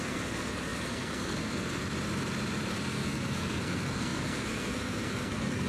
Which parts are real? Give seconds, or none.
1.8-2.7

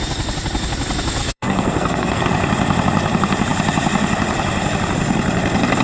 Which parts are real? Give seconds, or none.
0.0-1.2; 2.2-5.8

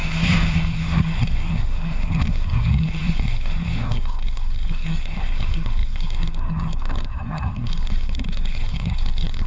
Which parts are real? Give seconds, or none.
none

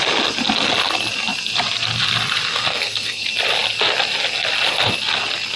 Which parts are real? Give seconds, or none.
0.0-2.5; 3.2-5.6

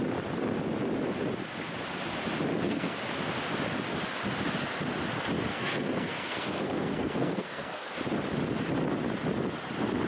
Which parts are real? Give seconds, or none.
0.0-2.5; 3.0-5.5; 7.9-10.1

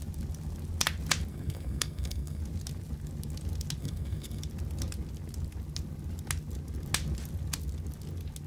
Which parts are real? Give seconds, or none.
0.0-1.3; 2.4-3.8; 4.4-8.5

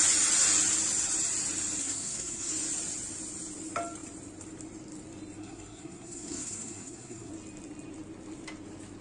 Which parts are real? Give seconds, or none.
0.0-1.8; 2.5-5.4; 7.3-9.0